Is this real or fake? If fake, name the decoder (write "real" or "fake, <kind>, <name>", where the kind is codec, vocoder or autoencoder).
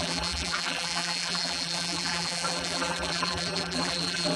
fake, vocoder, BigVGAN v2